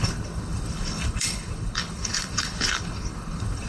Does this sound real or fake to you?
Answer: fake